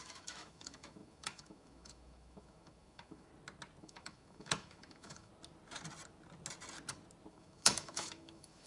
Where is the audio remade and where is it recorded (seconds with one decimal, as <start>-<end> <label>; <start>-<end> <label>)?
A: 0.0-3.3 remade; 3.3-3.8 recorded; 3.8-5.3 remade; 5.3-7.3 recorded; 7.3-8.7 remade